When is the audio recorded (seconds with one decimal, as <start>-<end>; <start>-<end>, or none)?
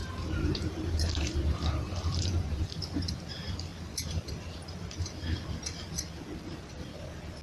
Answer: 2.9-7.4